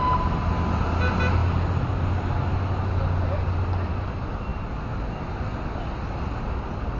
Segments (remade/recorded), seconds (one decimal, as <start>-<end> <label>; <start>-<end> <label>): 0.0-7.0 recorded